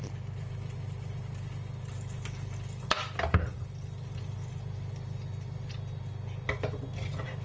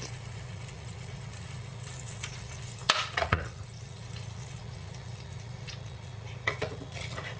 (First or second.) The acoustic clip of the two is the first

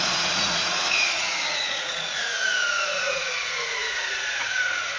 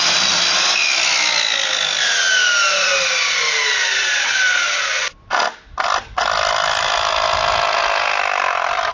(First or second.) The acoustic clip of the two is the second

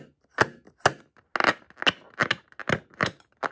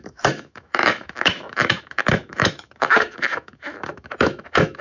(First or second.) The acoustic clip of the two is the first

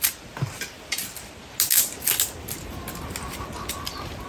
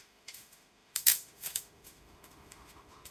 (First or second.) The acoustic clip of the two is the first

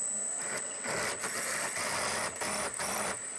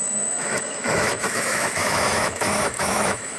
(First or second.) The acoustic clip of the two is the first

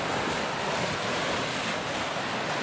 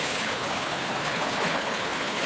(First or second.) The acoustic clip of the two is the first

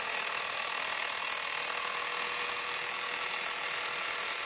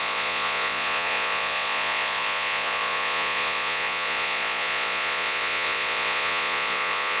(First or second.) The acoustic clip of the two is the first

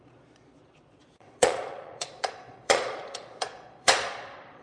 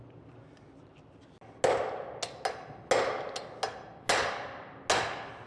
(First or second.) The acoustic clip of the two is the second